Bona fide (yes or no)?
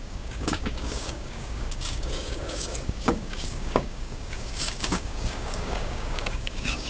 no